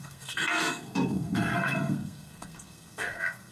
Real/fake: fake